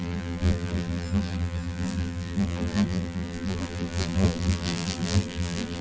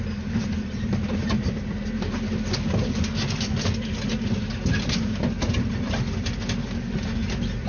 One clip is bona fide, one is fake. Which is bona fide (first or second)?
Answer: second